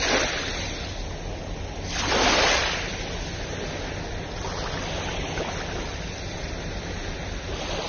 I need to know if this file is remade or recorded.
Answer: recorded